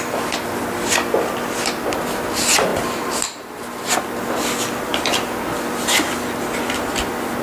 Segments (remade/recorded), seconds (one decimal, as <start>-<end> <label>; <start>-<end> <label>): 0.0-7.4 recorded